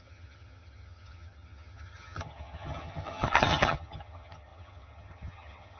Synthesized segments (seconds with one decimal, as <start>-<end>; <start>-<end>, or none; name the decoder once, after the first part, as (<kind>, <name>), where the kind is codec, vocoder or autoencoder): 0.0-5.8 (vocoder, HiFi-GAN)